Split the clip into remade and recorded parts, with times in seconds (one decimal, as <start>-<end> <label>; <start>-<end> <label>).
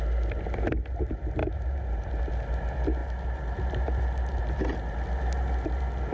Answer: 0.0-6.1 recorded